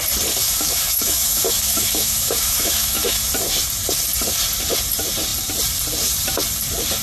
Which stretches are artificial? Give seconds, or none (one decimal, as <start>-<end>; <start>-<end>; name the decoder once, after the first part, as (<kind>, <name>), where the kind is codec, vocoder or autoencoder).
0.4-3.3 (autoencoder, DAC-VAE)